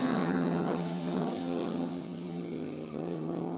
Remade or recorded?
remade